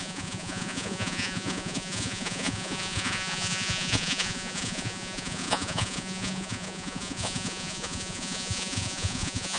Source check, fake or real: fake